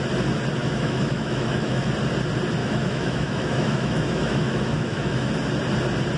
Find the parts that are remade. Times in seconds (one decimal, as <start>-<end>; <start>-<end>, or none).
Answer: 0.6-1.9; 2.6-5.3